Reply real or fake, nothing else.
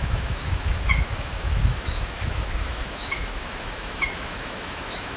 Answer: fake